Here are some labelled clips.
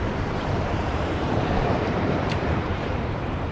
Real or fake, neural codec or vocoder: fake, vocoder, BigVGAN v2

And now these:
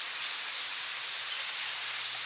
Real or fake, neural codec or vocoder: real